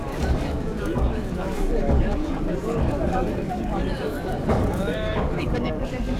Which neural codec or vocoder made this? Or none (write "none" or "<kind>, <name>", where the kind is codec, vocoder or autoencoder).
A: codec, DAC